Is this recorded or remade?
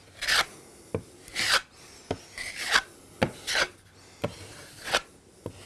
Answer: recorded